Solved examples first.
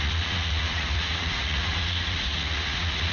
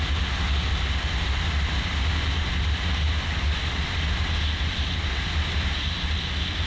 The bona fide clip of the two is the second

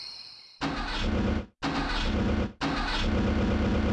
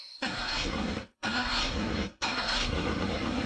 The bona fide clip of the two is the first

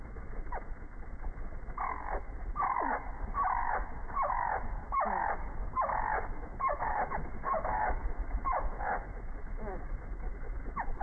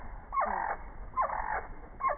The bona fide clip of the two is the second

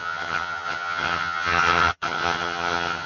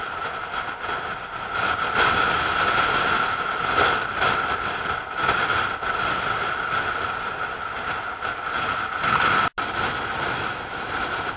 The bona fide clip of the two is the second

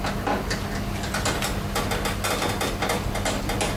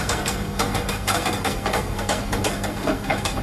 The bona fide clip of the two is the first